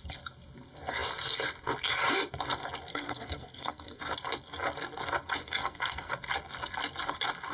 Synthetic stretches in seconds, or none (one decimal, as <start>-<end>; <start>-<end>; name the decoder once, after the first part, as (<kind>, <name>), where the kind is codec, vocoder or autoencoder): 2.9-4.0 (codec, SNAC); 5.4-6.1